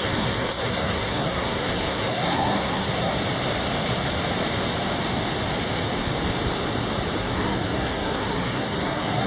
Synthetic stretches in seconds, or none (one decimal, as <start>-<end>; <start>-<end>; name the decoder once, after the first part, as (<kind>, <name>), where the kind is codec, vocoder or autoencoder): 0.0-3.1 (codec, SNAC); 7.2-9.3